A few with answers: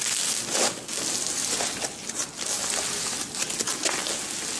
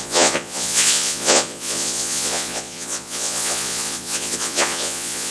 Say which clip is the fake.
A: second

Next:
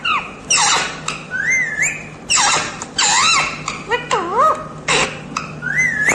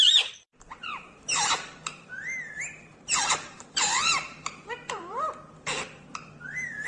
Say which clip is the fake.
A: second